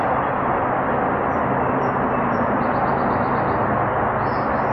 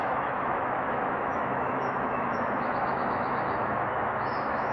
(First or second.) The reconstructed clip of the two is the second